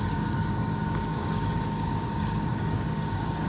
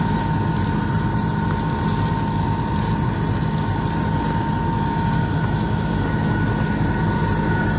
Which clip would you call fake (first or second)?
first